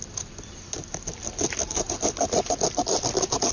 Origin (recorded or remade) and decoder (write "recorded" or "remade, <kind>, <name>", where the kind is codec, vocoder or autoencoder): remade, vocoder, BigVGAN v2